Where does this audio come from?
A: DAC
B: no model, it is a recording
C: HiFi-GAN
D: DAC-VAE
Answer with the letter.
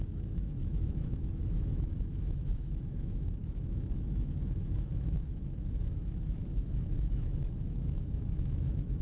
D